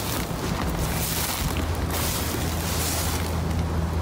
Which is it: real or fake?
real